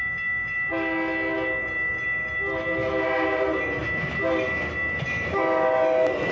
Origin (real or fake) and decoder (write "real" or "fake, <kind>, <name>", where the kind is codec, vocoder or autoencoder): real